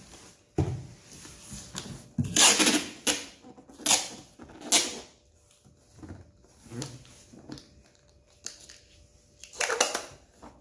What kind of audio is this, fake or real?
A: real